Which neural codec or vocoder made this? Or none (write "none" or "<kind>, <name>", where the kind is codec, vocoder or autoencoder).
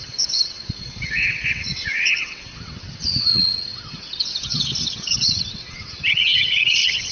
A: vocoder, WaveNeXt